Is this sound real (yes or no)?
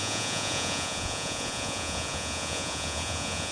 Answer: no